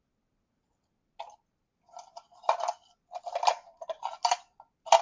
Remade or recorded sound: recorded